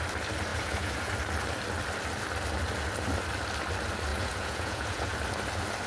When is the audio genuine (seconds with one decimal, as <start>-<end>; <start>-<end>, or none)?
0.0-0.5; 1.1-4.1; 5.1-5.9